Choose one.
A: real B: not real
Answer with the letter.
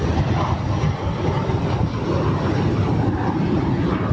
A